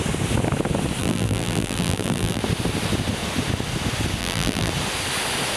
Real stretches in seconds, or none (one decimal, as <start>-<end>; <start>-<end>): 0.0-1.0; 2.4-4.2; 4.7-5.6